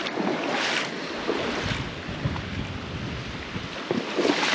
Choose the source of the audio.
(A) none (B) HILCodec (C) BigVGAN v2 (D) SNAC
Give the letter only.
A